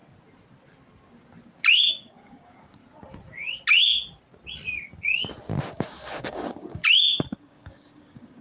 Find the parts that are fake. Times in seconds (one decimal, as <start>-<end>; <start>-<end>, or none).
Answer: 1.9-2.8; 5.7-6.8; 7.4-8.4